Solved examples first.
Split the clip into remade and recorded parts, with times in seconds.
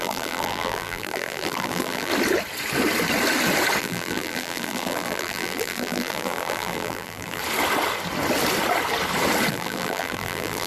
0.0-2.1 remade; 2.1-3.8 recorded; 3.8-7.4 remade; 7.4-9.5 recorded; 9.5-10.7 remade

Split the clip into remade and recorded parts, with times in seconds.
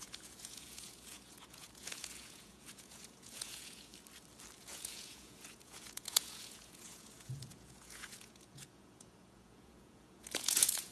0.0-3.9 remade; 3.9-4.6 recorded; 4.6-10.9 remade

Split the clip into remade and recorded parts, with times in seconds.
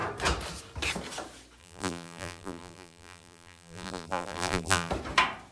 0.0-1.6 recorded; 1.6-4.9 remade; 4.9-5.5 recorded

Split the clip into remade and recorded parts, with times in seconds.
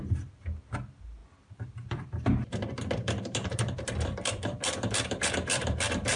0.0-6.2 remade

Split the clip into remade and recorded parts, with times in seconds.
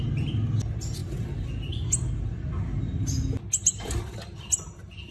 0.0-5.1 recorded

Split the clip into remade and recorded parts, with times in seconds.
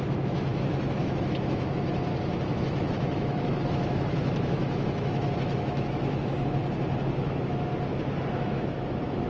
0.0-1.9 remade; 1.9-2.5 recorded; 2.5-6.6 remade; 6.6-7.2 recorded; 7.2-7.7 remade; 7.7-8.4 recorded; 8.4-9.3 remade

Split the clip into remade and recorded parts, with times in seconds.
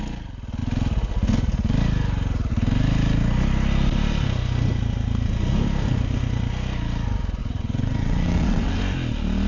0.0-7.4 recorded; 7.4-8.8 remade; 8.8-9.5 recorded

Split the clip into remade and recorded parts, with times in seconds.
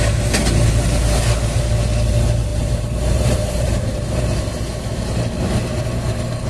0.0-2.5 recorded; 2.5-4.2 remade; 4.2-6.5 recorded